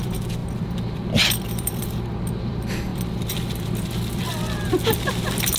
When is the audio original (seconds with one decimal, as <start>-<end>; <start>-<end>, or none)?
none